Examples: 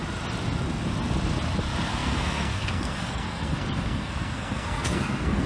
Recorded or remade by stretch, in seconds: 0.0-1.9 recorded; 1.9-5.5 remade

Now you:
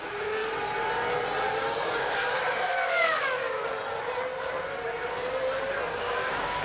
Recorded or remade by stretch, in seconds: 0.0-0.4 remade; 0.4-1.5 recorded; 1.5-3.6 remade; 3.6-6.0 recorded; 6.0-6.6 remade

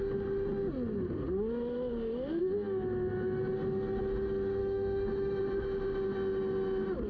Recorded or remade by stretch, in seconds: 0.0-4.6 recorded; 4.6-5.4 remade; 5.4-7.1 recorded

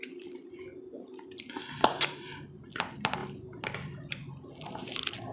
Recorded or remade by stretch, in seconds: 0.0-5.3 recorded

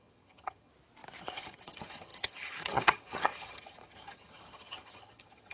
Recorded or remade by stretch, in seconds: 0.0-0.7 remade; 0.7-1.2 recorded; 1.2-5.5 remade

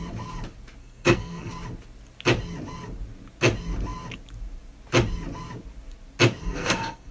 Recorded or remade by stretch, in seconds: 0.0-0.8 recorded; 0.8-1.5 remade; 1.5-6.4 recorded; 6.4-7.1 remade

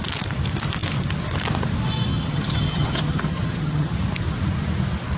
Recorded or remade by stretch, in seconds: 0.0-2.1 recorded; 2.1-4.0 remade; 4.0-5.2 recorded

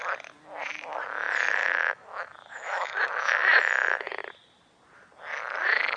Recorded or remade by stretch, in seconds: 0.0-1.6 recorded; 1.6-3.1 remade; 3.1-6.0 recorded